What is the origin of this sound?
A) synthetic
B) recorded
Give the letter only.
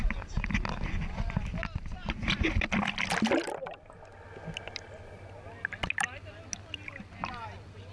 B